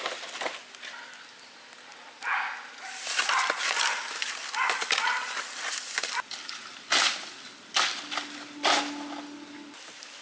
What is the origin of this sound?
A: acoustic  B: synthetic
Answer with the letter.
A